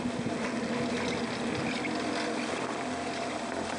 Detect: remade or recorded recorded